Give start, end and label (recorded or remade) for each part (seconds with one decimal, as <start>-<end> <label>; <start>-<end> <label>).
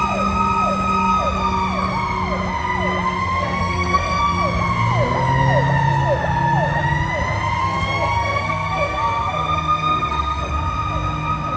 0.0-3.2 recorded; 3.2-4.2 remade; 4.2-7.6 recorded; 7.6-10.5 remade; 10.5-11.6 recorded